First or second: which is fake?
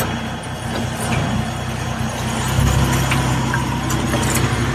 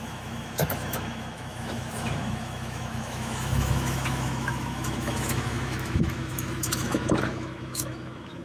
second